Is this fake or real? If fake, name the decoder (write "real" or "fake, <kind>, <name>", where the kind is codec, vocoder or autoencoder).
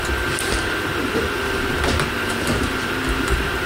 real